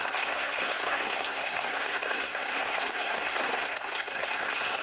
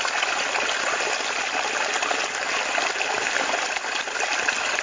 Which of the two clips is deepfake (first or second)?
first